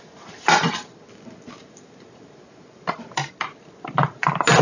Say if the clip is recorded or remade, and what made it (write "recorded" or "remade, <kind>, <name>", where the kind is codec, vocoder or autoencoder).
recorded